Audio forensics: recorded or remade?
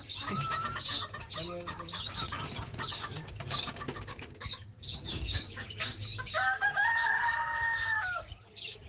remade